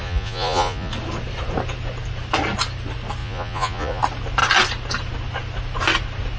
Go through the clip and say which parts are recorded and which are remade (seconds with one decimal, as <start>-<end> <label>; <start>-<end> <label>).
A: 0.0-0.9 remade; 0.9-3.2 recorded; 3.2-4.0 remade; 4.0-6.4 recorded